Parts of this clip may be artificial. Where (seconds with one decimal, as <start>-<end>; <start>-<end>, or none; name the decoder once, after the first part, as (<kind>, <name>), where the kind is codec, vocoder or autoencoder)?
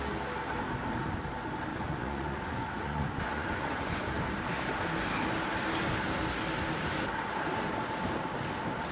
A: 1.7-4.0 (vocoder, Vocos)